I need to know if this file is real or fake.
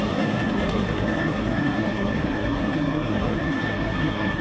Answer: fake